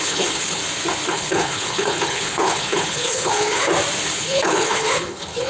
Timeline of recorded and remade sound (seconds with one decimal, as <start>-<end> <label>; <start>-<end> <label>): 0.0-0.6 remade; 0.6-1.1 recorded; 1.1-3.7 remade; 3.7-4.2 recorded; 4.2-5.5 remade